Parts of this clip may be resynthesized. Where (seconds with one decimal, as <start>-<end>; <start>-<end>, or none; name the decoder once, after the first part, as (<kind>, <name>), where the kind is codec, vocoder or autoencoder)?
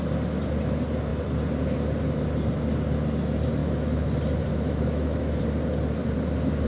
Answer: 3.6-4.1 (autoencoder, DAC-VAE); 4.5-5.4